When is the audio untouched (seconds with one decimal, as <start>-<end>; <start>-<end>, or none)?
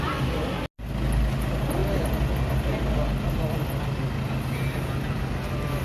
0.0-5.8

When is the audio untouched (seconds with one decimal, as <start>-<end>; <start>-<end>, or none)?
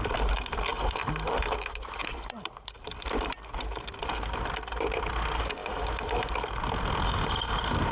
0.0-0.7; 3.2-5.6; 6.1-7.9